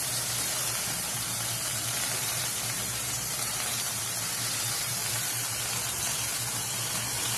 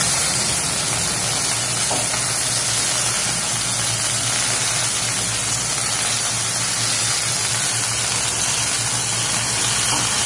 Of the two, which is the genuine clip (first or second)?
second